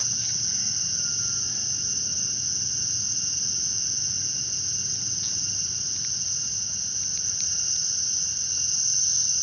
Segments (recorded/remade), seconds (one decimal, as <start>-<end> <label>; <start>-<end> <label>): 0.0-7.1 recorded; 7.1-8.1 remade; 8.1-9.4 recorded